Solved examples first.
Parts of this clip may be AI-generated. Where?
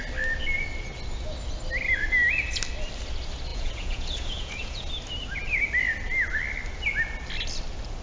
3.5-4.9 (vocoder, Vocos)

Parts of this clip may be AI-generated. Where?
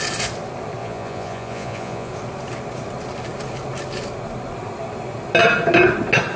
0.8-2.1 (vocoder, Vocos)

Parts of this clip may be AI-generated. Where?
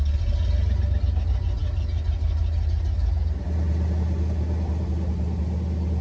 none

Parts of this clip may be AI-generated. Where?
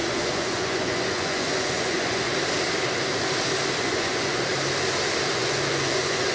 0.0-2.3 (vocoder, Vocos); 3.8-4.5; 5.3-6.3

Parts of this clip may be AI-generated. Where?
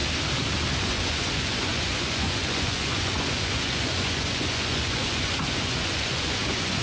0.8-6.8 (vocoder, Vocos)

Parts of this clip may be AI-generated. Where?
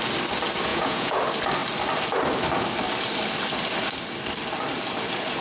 0.7-1.2 (vocoder, Vocos)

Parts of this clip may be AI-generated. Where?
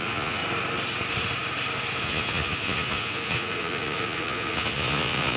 0.0-0.4 (vocoder, Vocos); 2.0-5.4